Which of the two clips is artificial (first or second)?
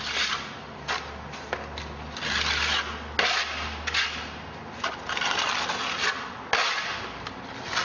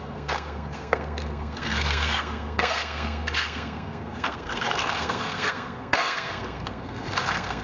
second